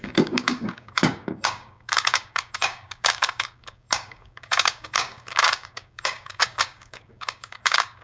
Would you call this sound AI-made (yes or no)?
yes